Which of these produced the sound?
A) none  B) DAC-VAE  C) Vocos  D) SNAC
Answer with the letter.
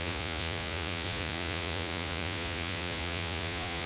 C